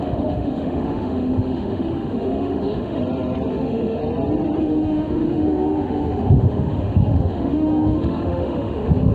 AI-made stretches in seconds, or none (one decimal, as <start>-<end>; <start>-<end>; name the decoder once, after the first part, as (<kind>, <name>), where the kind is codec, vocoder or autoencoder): 0.0-3.0 (autoencoder, DAC-VAE); 3.5-4.0; 4.6-9.1